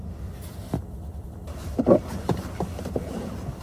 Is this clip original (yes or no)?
no